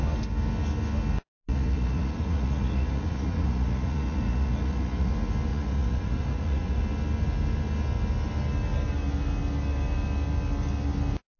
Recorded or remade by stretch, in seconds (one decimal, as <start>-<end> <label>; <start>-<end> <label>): 0.0-1.5 recorded; 1.5-5.1 remade; 5.1-5.5 recorded; 5.5-6.8 remade; 6.8-11.4 recorded